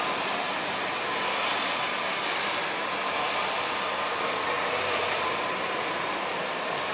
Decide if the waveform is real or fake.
real